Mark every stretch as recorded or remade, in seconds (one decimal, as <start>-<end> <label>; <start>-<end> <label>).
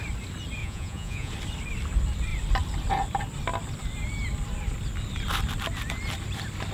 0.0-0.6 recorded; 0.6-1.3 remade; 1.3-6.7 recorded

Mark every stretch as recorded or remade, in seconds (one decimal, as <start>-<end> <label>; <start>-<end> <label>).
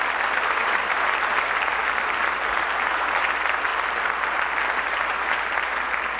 0.0-0.6 recorded; 0.6-1.2 remade; 1.2-6.2 recorded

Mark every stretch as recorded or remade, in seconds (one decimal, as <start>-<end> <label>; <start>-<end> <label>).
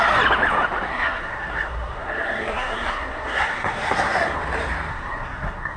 0.0-0.9 recorded; 0.9-4.4 remade; 4.4-4.9 recorded; 4.9-5.8 remade